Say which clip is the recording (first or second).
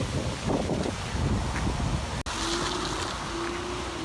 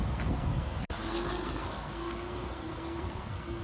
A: first